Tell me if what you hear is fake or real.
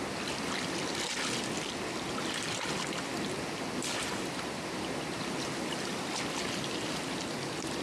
real